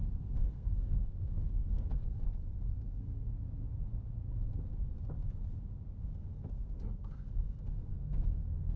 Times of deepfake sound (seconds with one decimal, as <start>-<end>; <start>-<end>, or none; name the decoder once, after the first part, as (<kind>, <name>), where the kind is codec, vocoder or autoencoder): 0.0-3.3 (codec, SNAC); 6.0-8.8